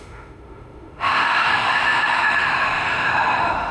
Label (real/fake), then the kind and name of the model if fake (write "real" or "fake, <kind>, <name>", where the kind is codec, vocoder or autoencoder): fake, autoencoder, DAC-VAE